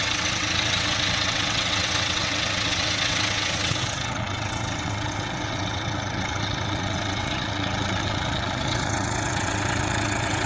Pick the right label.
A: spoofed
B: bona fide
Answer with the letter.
A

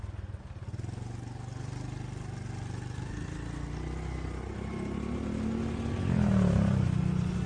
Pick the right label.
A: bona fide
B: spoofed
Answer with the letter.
A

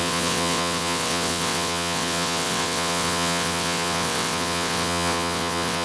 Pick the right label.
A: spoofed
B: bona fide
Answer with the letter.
A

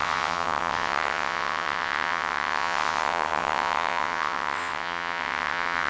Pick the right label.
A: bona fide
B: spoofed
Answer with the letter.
B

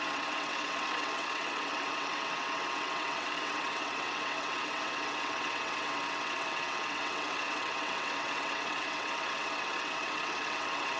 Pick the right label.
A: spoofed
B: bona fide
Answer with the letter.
A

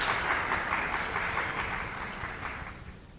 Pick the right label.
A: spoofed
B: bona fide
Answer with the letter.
B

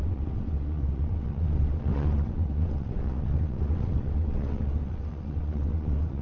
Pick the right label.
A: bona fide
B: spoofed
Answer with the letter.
B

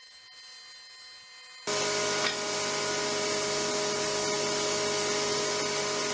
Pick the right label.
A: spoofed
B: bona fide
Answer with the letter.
B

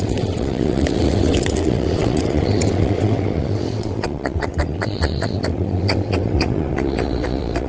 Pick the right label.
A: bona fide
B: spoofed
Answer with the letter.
B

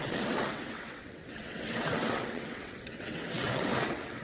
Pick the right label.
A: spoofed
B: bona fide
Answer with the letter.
A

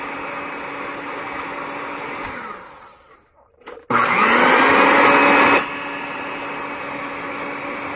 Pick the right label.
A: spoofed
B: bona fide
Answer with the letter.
B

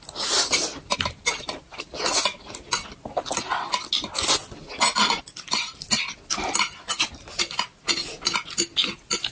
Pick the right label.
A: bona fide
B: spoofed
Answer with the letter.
A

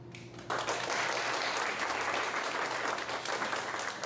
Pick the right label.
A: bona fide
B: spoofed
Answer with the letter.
A